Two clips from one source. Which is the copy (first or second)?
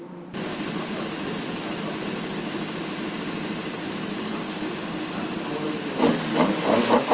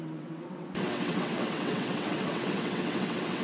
second